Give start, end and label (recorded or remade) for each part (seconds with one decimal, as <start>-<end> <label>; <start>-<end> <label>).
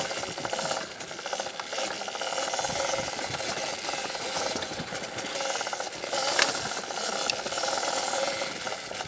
0.0-4.0 recorded; 4.0-4.9 remade; 4.9-9.1 recorded